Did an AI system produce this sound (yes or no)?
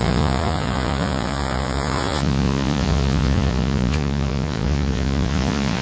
yes